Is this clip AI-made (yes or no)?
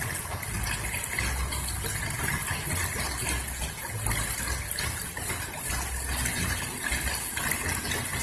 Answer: no